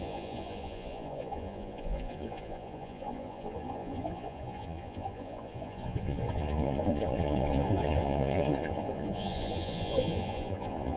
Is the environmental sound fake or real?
fake